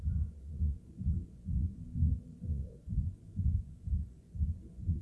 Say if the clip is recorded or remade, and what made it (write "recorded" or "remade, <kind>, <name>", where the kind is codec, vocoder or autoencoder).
remade, vocoder, Vocos